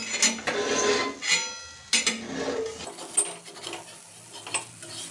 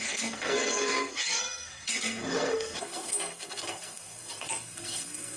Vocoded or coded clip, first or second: second